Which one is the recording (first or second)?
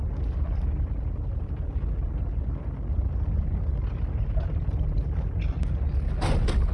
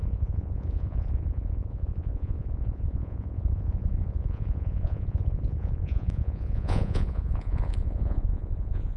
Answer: first